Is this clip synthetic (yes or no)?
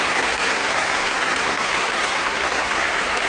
yes